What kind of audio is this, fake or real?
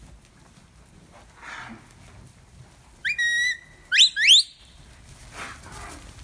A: real